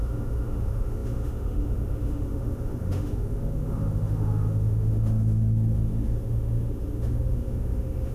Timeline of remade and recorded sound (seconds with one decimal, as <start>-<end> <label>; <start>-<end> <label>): 0.0-8.1 remade

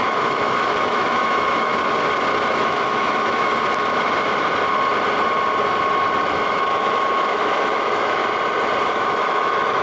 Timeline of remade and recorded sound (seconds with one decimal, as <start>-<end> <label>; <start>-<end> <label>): 0.0-1.7 remade; 1.7-2.5 recorded; 2.5-3.5 remade; 3.5-6.3 recorded; 6.3-8.2 remade; 8.2-8.9 recorded; 8.9-9.8 remade

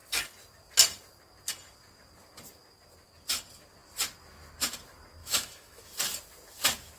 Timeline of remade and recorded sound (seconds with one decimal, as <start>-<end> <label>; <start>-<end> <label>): 0.0-5.2 recorded; 5.2-5.8 remade; 5.8-7.0 recorded

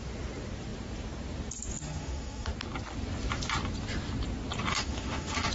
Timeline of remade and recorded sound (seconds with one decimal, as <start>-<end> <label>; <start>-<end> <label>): 0.0-1.8 recorded; 1.8-2.5 remade; 2.5-4.7 recorded; 4.7-5.5 remade

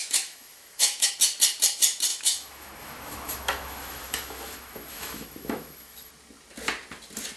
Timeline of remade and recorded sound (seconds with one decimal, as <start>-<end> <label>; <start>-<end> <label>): 0.0-1.1 remade; 1.1-2.1 recorded; 2.1-6.1 remade; 6.1-7.4 recorded